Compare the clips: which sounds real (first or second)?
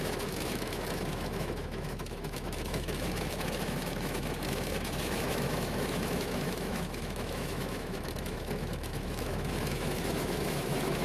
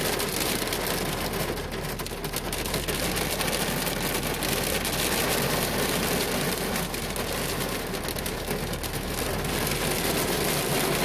second